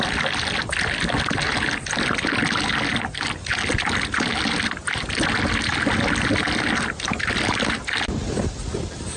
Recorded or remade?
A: recorded